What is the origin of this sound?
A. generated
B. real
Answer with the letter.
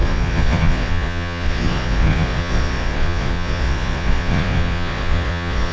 A